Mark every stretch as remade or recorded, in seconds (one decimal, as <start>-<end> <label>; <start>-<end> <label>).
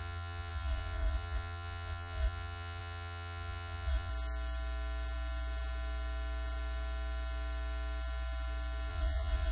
0.0-4.1 remade; 4.1-8.9 recorded; 8.9-9.5 remade